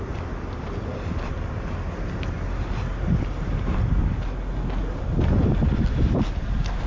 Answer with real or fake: real